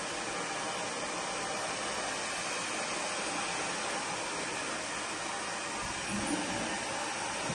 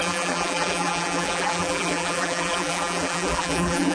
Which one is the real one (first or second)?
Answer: first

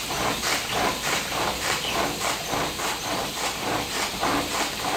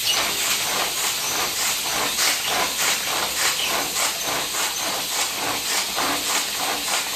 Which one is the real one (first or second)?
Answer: second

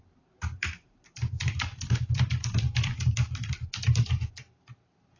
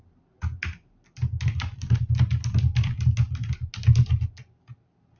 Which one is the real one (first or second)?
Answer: second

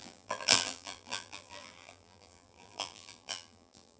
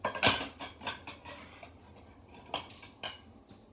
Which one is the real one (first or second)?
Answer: second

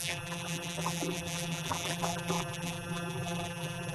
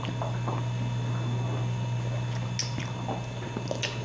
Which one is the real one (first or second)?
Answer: second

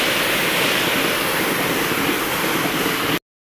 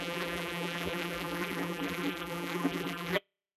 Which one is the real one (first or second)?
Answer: first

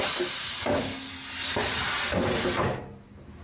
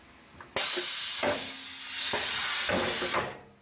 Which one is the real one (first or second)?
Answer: second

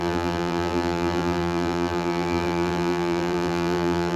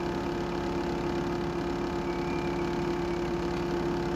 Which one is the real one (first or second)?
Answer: second